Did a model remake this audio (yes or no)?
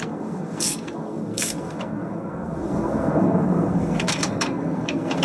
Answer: yes